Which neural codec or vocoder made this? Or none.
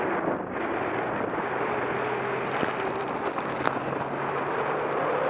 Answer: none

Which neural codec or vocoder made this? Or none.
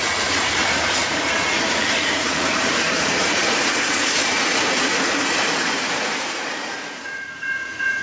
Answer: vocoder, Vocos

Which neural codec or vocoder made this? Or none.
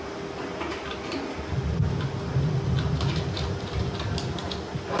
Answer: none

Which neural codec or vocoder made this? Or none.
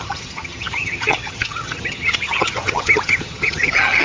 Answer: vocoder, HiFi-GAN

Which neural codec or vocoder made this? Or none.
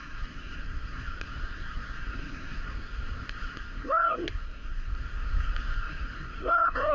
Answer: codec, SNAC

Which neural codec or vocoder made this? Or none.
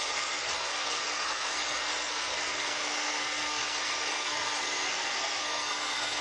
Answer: codec, SNAC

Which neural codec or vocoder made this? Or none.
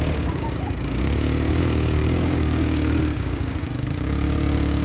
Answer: codec, DAC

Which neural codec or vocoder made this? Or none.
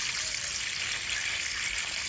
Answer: vocoder, BigVGAN v2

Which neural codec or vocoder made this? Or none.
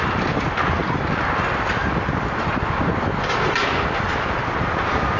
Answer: none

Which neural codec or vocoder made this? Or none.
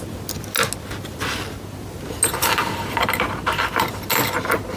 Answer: none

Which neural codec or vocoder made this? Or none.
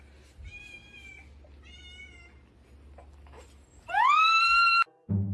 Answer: none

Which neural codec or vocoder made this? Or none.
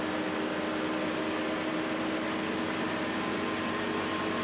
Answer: none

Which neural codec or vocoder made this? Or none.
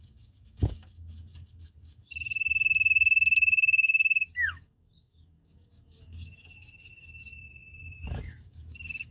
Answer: codec, DAC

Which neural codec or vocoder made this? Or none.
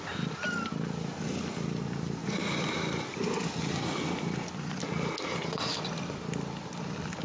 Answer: none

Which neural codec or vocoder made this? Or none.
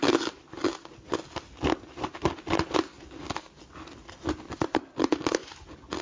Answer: none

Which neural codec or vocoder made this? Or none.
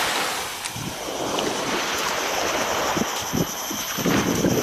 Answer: none